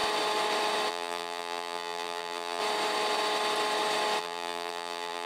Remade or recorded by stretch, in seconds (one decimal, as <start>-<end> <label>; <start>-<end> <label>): 0.0-0.9 recorded; 0.9-2.6 remade; 2.6-4.2 recorded; 4.2-5.3 remade